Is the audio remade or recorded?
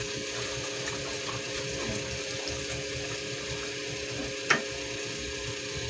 recorded